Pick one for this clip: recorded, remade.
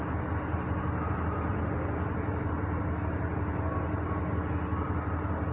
recorded